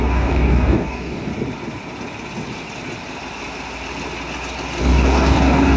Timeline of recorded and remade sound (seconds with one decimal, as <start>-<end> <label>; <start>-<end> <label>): 0.0-1.3 remade; 1.3-4.8 recorded; 4.8-5.8 remade